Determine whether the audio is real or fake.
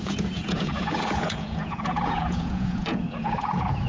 fake